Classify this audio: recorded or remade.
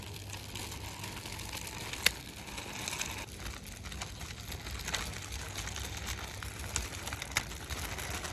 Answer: recorded